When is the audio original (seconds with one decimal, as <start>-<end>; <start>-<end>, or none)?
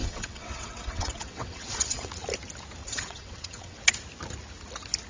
2.1-2.8; 3.8-5.1